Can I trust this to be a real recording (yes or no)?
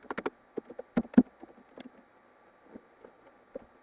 yes